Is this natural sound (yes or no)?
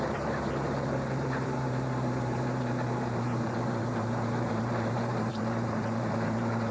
no